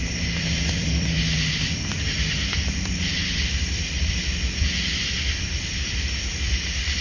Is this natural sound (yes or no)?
no